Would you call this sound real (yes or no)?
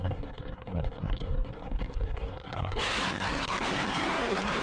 no